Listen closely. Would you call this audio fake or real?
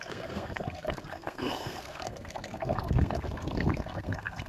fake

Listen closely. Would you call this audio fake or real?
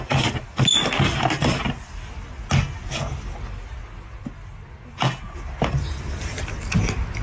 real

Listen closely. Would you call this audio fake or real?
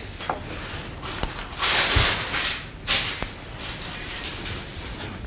real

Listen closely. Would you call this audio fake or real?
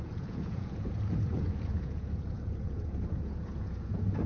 fake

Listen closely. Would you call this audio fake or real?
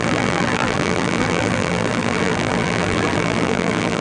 fake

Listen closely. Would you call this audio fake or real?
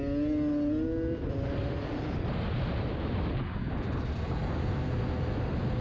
real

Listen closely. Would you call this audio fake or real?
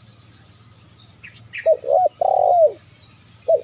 real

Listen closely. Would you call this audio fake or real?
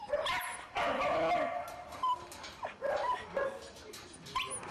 real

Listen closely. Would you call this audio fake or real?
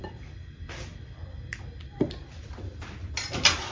real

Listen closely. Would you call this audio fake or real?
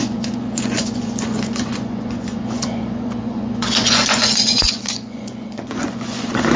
fake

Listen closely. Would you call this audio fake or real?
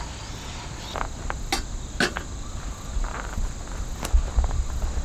real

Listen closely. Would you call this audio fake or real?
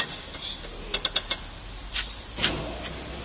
real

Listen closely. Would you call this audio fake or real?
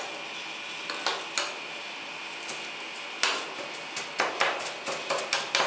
real